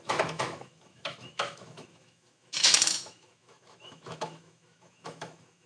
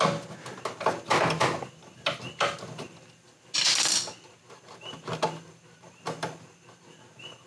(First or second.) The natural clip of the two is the second